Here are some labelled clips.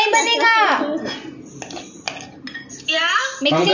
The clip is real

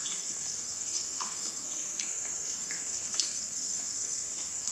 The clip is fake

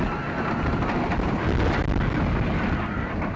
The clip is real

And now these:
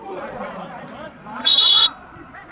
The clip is fake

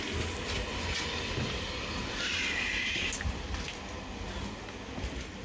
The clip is real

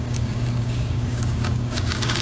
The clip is fake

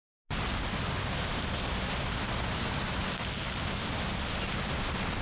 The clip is real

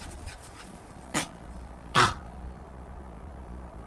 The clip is fake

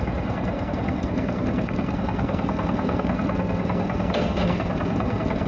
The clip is fake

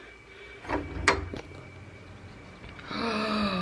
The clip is real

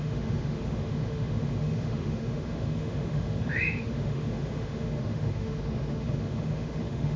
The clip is fake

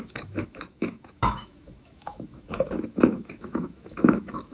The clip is fake